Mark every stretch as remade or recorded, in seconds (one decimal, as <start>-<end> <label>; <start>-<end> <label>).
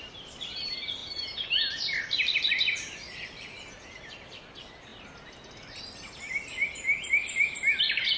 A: 0.0-4.9 remade; 4.9-7.1 recorded; 7.1-8.2 remade